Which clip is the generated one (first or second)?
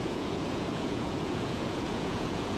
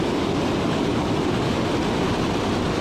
first